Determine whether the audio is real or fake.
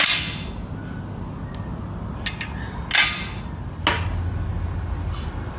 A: real